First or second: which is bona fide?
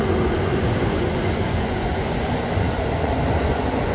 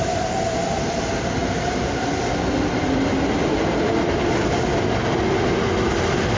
second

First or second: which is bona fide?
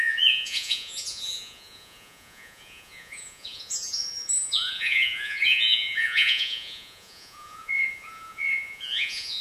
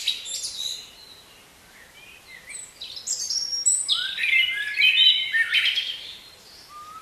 second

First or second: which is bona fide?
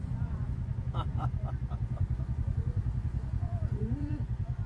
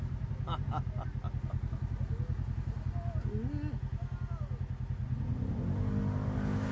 second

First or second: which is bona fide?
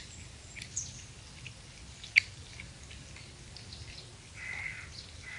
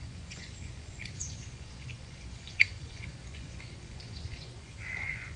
first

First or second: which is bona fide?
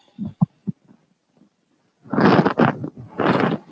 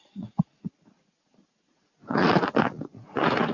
first